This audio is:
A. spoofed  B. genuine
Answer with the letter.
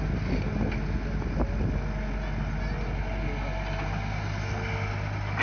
B